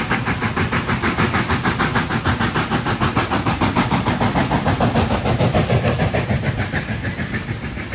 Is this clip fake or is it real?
real